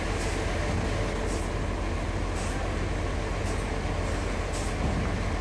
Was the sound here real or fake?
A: real